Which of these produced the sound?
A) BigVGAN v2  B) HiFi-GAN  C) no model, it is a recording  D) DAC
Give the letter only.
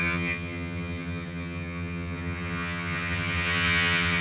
B